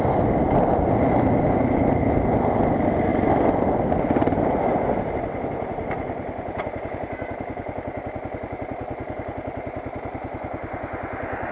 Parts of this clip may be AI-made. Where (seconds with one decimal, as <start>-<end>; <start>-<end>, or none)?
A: none